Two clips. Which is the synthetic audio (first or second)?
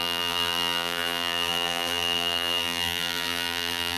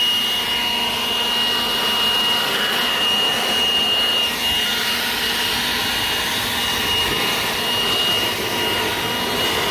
first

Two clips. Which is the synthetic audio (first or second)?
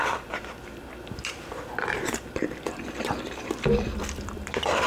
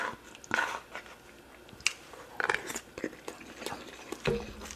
first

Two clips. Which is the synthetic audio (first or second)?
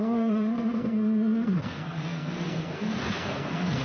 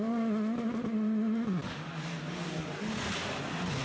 first